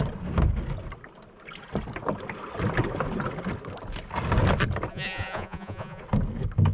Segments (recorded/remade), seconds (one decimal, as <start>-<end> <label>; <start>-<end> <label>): 0.0-4.9 recorded; 4.9-6.0 remade; 6.0-6.7 recorded